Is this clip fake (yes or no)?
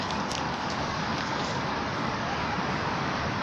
yes